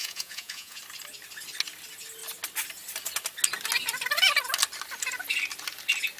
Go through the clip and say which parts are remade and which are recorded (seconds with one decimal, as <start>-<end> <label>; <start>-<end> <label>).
0.0-0.8 remade; 0.8-6.2 recorded